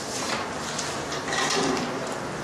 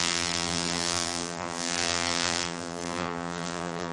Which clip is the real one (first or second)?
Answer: first